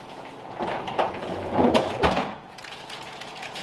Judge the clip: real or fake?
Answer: fake